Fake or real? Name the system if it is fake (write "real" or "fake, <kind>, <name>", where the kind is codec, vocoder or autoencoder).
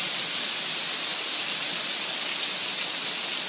real